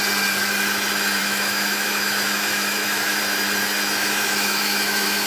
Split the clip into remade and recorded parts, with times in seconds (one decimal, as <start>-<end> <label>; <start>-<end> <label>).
0.0-1.2 recorded; 1.2-3.2 remade; 3.2-4.0 recorded; 4.0-5.3 remade